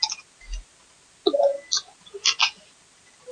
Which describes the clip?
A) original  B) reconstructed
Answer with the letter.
A